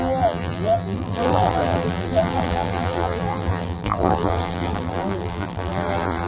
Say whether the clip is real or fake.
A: fake